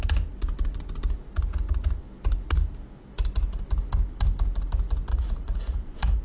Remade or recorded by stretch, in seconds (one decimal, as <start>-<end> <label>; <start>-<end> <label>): 0.0-5.1 recorded; 5.1-6.2 remade